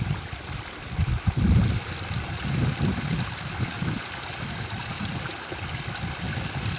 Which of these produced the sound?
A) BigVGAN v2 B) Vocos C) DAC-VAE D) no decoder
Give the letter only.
D